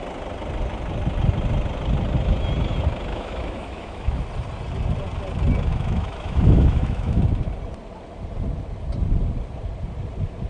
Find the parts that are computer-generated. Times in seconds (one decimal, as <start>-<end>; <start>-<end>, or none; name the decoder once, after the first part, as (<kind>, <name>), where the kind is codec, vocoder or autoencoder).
3.1-4.2 (autoencoder, DAC-VAE); 5.7-7.2